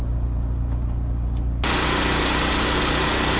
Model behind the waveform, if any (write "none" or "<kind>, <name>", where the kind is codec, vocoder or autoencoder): none